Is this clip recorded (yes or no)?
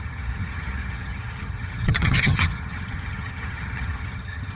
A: no